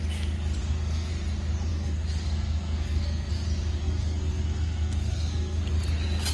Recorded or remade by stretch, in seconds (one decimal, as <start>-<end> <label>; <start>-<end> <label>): 0.0-0.6 recorded; 0.6-1.1 remade; 1.1-1.7 recorded; 1.7-3.3 remade; 3.3-3.8 recorded; 3.8-5.6 remade; 5.6-6.3 recorded